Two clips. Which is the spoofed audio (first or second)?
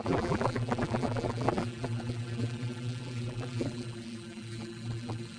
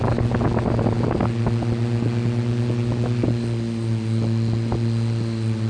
first